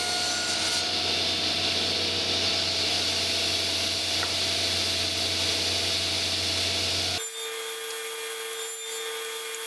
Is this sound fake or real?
real